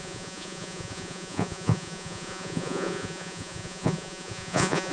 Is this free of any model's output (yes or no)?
no